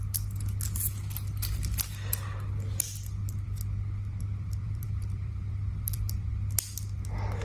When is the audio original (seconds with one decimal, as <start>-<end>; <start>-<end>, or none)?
0.0-3.2; 6.3-7.4